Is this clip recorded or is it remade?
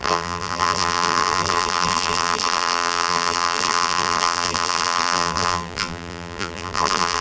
remade